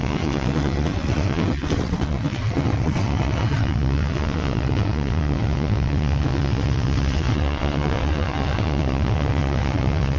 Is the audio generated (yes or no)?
yes